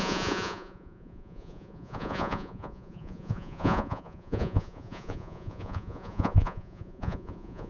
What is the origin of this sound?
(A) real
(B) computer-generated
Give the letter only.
B